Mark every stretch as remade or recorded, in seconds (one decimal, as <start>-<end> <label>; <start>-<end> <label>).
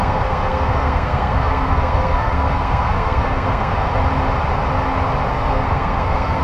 0.0-3.9 remade; 3.9-5.3 recorded; 5.3-6.4 remade